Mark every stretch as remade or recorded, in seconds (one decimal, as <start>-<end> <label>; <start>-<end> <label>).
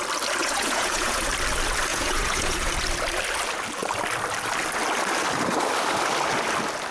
0.0-0.4 recorded; 0.4-1.3 remade; 1.3-1.9 recorded; 1.9-2.7 remade; 2.7-6.9 recorded